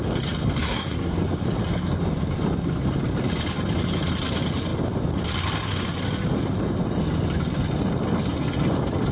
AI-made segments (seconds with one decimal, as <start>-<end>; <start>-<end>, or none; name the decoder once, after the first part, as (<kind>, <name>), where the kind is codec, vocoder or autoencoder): 0.6-1.2 (codec, SNAC)